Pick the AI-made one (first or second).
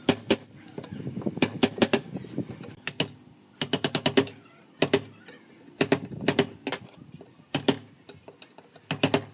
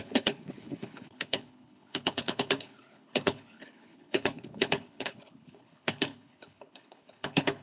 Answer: second